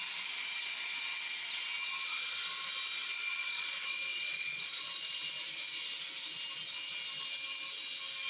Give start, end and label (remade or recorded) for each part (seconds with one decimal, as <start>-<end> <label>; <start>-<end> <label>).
0.0-3.1 recorded; 3.1-5.3 remade; 5.3-8.3 recorded